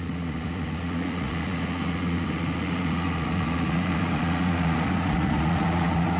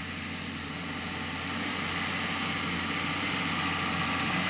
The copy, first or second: first